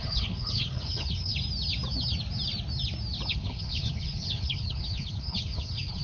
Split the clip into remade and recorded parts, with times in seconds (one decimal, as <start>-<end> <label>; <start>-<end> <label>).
0.0-1.3 remade; 1.3-3.3 recorded; 3.3-6.0 remade